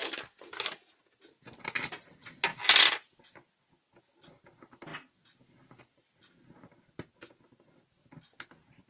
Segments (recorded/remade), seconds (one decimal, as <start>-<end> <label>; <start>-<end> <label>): 0.0-8.9 recorded